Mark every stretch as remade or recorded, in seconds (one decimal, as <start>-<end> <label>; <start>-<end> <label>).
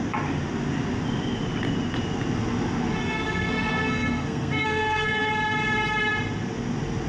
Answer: 0.0-3.0 recorded; 3.0-5.3 remade; 5.3-7.1 recorded